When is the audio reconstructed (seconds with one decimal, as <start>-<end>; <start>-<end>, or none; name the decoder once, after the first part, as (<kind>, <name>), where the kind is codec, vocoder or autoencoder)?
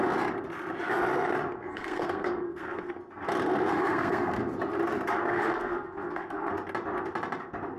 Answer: 1.7-2.9 (codec, SNAC); 3.7-4.3; 5.3-6.5